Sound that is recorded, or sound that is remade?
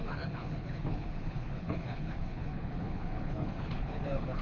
remade